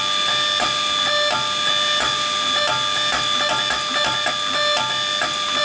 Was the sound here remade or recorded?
recorded